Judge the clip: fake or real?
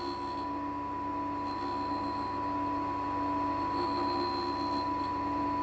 real